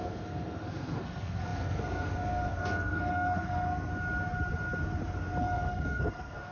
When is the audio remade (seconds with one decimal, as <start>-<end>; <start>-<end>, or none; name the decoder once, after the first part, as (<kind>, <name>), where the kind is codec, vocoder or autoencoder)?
0.0-3.9 (codec, SNAC); 5.4-6.5

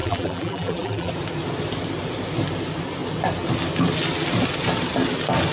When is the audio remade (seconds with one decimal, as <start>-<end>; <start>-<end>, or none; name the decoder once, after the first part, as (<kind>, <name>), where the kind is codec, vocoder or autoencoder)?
0.0-1.1 (vocoder, BigVGAN v2)

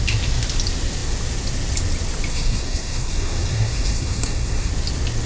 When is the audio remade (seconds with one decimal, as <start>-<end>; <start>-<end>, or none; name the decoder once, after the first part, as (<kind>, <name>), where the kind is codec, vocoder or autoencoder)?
2.3-4.7 (codec, SNAC)

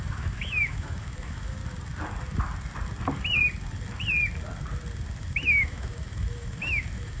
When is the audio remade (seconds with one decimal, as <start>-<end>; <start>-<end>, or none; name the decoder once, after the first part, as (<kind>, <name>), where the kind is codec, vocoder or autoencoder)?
0.0-1.6 (autoencoder, DAC-VAE); 5.2-7.2

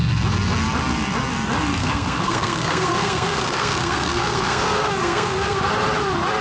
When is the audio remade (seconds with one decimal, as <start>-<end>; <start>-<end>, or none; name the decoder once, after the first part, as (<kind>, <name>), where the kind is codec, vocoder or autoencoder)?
1.8-5.6 (codec, SNAC)

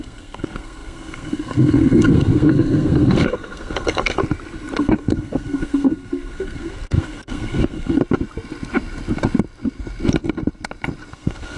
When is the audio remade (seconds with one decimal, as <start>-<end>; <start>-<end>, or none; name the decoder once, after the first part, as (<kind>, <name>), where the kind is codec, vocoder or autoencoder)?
0.0-4.2 (codec, SNAC); 4.8-8.0; 11.1-11.6

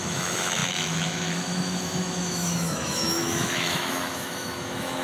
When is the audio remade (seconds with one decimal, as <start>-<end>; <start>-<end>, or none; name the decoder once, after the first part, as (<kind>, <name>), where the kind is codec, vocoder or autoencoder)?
0.0-5.0 (autoencoder, DAC-VAE)

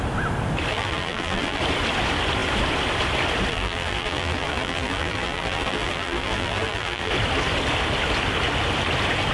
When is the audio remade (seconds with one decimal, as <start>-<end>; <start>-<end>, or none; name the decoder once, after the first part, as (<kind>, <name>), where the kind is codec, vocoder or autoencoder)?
0.7-1.6 (vocoder, BigVGAN v2); 3.5-7.1